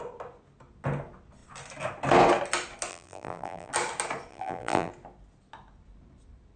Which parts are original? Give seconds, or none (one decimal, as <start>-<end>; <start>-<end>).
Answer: 0.0-2.9; 3.7-4.3; 4.9-6.6